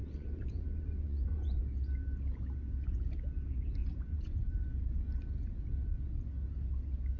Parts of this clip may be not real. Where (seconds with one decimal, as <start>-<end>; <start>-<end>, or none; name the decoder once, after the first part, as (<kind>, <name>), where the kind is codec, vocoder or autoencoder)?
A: 0.0-1.6 (vocoder, Vocos); 3.8-5.1